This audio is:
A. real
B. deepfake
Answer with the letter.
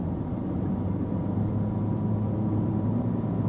B